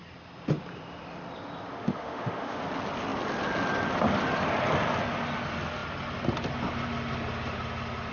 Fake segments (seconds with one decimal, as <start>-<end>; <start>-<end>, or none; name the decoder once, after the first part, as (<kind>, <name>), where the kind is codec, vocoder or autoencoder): 1.7-2.6 (autoencoder, DAC-VAE)